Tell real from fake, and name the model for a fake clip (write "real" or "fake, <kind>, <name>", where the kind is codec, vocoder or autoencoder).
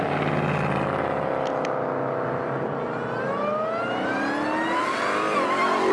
real